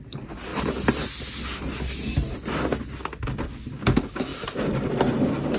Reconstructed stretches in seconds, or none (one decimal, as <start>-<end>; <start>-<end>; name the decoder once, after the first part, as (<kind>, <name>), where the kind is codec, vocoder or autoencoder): none